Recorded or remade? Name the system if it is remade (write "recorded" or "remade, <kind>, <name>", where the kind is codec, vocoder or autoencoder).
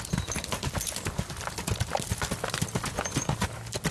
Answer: recorded